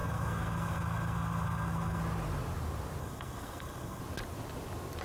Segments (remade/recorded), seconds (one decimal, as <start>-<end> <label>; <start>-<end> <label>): 0.0-2.0 remade; 2.0-3.0 recorded; 3.0-4.0 remade; 4.0-5.0 recorded